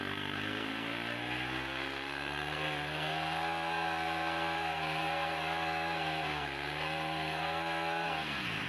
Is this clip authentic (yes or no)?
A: no